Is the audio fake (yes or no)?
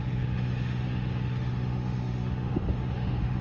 yes